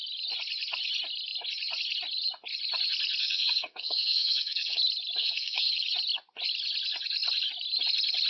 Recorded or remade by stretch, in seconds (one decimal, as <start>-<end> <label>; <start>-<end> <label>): 0.0-3.2 recorded; 3.2-4.8 remade; 4.8-5.2 recorded; 5.2-5.7 remade; 5.7-8.3 recorded